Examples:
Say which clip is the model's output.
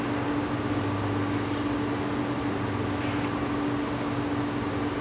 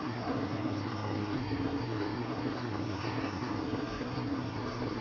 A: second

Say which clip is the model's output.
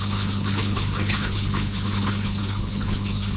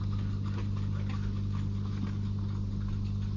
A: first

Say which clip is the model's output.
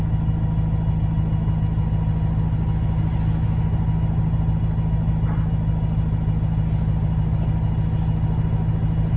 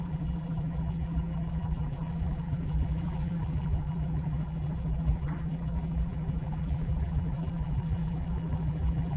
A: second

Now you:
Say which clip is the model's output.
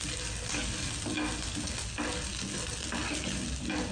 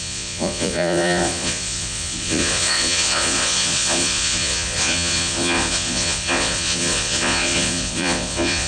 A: second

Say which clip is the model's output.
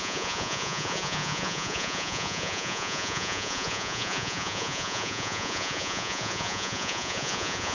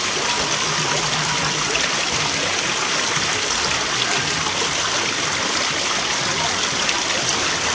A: first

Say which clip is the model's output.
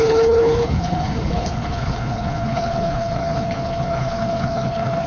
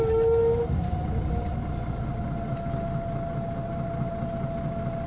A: first